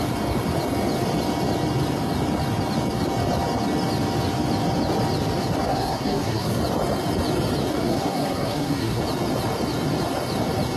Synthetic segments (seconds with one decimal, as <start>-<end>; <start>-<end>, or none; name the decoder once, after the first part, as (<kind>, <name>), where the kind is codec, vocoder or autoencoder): 5.7-6.6 (codec, SNAC); 7.7-9.0